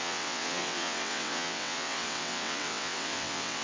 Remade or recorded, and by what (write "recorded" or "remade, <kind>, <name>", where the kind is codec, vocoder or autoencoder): remade, vocoder, WaveNeXt